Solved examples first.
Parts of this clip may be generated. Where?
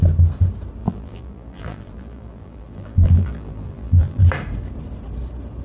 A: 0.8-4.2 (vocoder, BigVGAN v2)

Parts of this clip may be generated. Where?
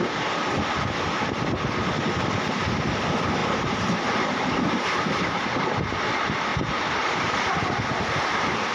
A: 3.4-5.5 (vocoder, BigVGAN v2); 6.5-7.5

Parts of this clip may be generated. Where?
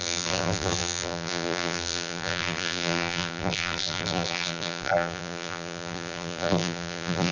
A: 0.0-7.3 (vocoder, BigVGAN v2)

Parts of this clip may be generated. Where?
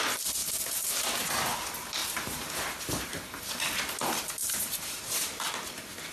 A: 2.0-3.4 (vocoder, BigVGAN v2); 4.4-5.0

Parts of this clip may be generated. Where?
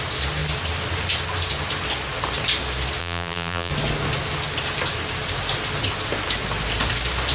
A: 3.0-3.7 (vocoder, BigVGAN v2)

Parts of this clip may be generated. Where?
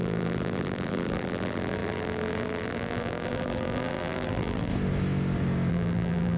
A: 0.0-4.7 (vocoder, BigVGAN v2); 5.7-6.4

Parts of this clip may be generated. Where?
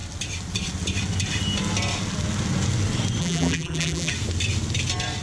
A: 3.2-4.1 (vocoder, BigVGAN v2)